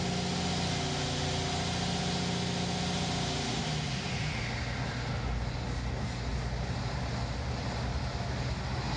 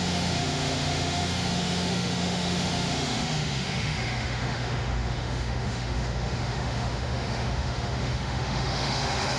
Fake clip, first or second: second